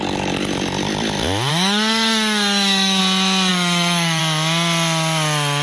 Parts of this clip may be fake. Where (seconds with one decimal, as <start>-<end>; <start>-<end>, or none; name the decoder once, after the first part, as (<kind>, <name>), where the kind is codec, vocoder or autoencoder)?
1.5-3.0 (codec, DAC); 3.5-4.2